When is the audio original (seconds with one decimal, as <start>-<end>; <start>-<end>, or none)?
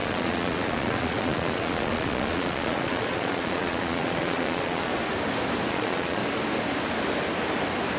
4.9-5.7; 6.2-8.0